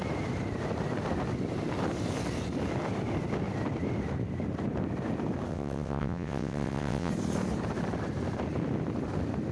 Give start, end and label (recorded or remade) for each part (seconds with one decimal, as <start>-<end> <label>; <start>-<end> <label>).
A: 0.0-5.5 recorded; 5.5-7.1 remade; 7.1-9.5 recorded